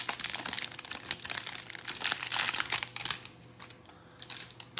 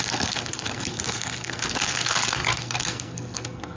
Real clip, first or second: first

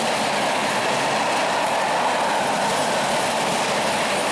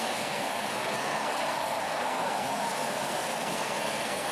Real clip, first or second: first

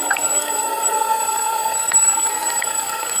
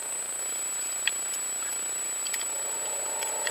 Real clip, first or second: second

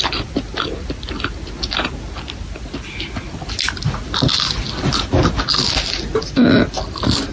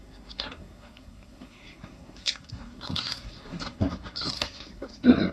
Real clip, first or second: first